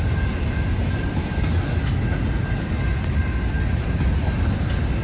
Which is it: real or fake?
real